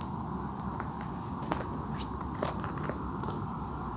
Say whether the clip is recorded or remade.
recorded